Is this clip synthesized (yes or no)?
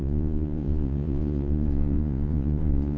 yes